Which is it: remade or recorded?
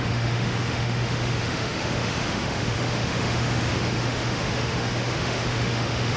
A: remade